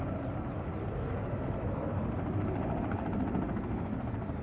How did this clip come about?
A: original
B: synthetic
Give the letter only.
A